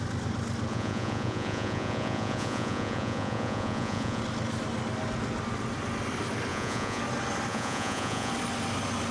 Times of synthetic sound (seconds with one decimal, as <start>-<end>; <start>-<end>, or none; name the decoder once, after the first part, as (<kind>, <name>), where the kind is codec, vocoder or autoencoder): 0.7-4.2 (vocoder, Vocos); 6.5-7.0; 7.5-8.3

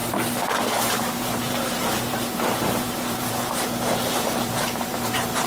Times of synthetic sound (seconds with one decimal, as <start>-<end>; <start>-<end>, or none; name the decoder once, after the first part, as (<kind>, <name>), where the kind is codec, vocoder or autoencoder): 0.0-5.5 (vocoder, BigVGAN v2)

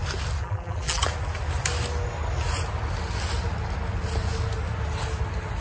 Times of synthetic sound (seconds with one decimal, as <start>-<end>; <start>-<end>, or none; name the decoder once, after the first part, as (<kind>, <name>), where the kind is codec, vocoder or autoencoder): 0.4-1.0 (vocoder, BigVGAN v2)

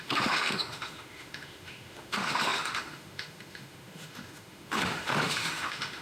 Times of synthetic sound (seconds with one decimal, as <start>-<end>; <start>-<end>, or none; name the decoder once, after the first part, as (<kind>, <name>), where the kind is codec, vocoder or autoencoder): 0.0-6.0 (autoencoder, DAC-VAE)

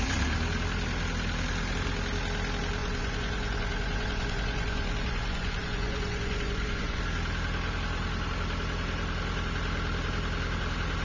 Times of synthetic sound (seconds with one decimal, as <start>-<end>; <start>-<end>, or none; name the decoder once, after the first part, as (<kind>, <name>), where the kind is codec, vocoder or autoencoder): 2.8-7.0 (vocoder, Vocos)

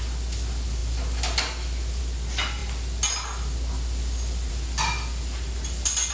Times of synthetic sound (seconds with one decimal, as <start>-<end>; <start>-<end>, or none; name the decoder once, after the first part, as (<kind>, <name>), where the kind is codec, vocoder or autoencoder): none